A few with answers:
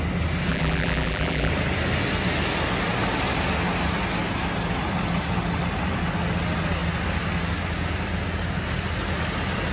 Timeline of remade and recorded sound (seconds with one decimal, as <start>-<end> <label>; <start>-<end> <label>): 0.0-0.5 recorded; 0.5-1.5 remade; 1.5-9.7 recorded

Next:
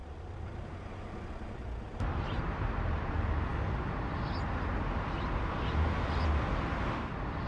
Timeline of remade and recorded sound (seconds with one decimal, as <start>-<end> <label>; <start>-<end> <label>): 0.0-0.9 remade; 0.9-1.9 recorded; 1.9-3.1 remade; 3.1-7.5 recorded

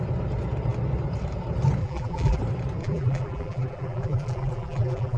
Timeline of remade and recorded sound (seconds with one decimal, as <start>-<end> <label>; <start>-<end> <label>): 0.0-1.8 recorded; 1.8-2.4 remade; 2.4-2.8 recorded; 2.8-5.2 remade

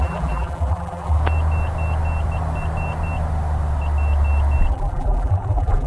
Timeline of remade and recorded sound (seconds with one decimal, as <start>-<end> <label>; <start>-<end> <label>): 0.0-1.2 remade; 1.2-4.7 recorded; 4.7-5.9 remade

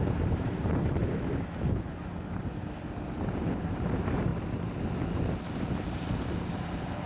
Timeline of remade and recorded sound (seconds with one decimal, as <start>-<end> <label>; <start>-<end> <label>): 0.0-1.0 remade; 1.0-3.3 recorded; 3.3-4.3 remade; 4.3-5.6 recorded; 5.6-7.1 remade

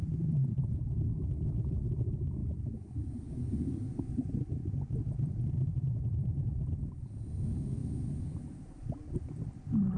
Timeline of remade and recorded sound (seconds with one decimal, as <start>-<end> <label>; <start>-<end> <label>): 0.0-7.8 remade; 7.8-10.0 recorded

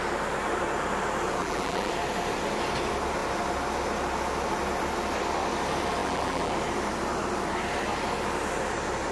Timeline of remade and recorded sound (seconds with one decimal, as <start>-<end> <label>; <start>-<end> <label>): 0.0-1.4 recorded; 1.4-1.9 remade; 1.9-6.0 recorded; 6.0-6.5 remade; 6.5-9.1 recorded